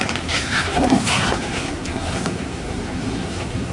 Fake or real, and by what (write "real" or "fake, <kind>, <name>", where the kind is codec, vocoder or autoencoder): fake, codec, SNAC